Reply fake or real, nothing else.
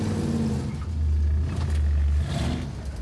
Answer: real